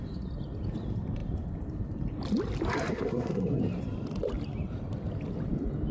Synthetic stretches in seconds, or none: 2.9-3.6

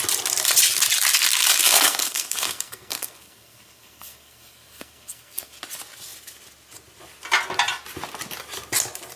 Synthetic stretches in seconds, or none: 1.6-5.6

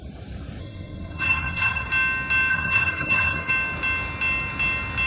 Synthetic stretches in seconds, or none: 0.6-1.9; 2.5-3.5

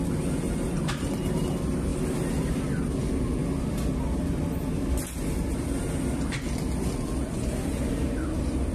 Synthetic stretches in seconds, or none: none

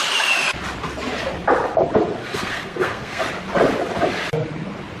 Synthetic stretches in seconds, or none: 2.2-3.2